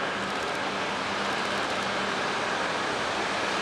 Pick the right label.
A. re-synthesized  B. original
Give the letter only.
B